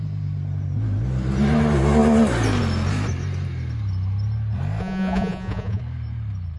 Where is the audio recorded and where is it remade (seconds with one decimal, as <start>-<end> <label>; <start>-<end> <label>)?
0.0-4.8 recorded; 4.8-5.8 remade; 5.8-6.6 recorded